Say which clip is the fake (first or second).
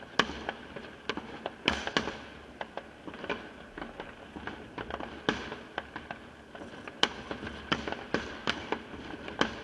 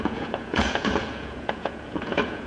second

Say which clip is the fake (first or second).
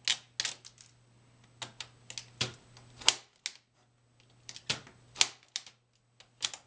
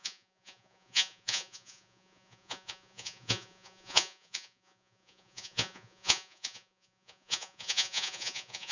second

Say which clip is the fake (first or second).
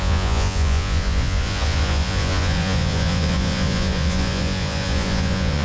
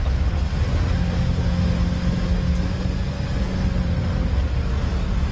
first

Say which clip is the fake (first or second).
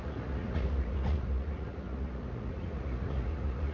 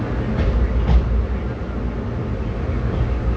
first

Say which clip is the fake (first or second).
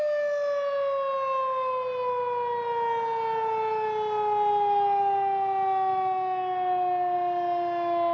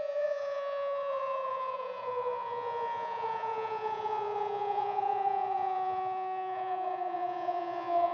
second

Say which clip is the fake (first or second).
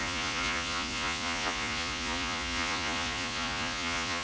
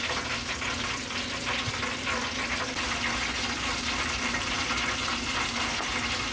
first